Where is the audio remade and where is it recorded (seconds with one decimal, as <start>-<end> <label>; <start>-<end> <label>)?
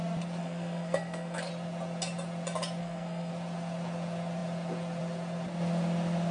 0.0-0.4 recorded; 0.4-1.5 remade; 1.5-2.8 recorded; 2.8-3.3 remade; 3.3-6.3 recorded